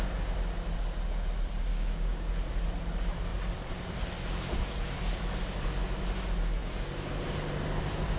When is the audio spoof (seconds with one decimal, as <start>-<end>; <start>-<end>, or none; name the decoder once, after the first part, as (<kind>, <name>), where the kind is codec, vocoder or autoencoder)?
1.7-2.3 (codec, DAC)